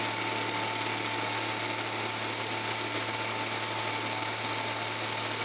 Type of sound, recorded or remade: recorded